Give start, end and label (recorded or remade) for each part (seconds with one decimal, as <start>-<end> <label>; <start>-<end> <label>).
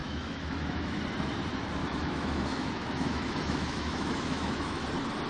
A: 0.0-1.0 remade; 1.0-1.8 recorded; 1.8-4.8 remade; 4.8-5.3 recorded